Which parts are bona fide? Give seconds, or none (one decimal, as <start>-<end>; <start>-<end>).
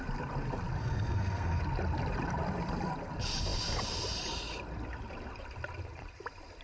0.0-0.8; 1.6-6.6